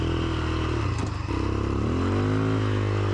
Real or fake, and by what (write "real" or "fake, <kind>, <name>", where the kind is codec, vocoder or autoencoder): real